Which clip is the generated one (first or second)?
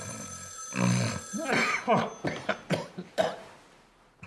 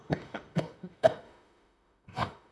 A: second